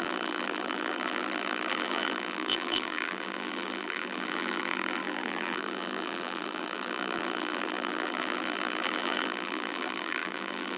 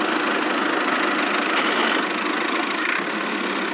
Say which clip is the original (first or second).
second